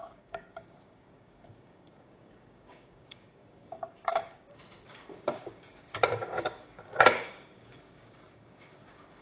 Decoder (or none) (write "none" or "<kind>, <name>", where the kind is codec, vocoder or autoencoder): codec, DAC